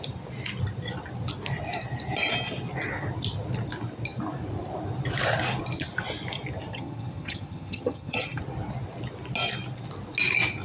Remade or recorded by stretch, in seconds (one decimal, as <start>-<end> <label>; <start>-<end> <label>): 0.0-6.7 recorded; 6.7-8.4 remade; 8.4-10.6 recorded